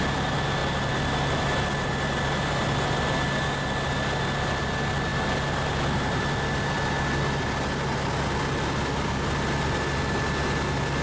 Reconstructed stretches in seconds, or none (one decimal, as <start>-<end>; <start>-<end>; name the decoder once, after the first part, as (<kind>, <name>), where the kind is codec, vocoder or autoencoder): none